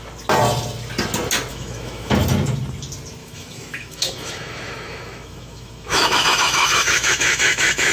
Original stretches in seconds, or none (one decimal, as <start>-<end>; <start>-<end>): 0.0-1.5; 2.1-3.2